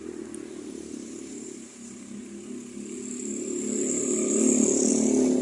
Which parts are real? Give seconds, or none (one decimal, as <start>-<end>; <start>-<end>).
0.0-5.4